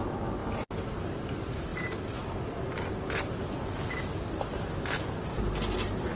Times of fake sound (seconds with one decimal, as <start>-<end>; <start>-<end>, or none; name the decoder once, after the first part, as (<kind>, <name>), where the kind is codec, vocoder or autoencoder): none